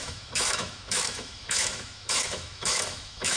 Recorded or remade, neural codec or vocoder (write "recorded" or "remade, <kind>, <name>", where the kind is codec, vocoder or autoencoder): remade, autoencoder, DAC-VAE